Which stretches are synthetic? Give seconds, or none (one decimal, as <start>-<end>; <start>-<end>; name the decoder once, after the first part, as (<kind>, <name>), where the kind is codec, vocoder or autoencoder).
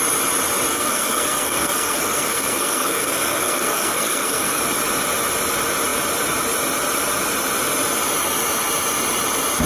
0.7-4.6 (codec, SNAC)